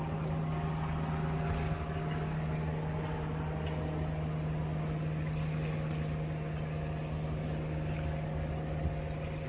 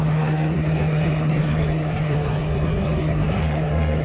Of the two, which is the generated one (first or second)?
second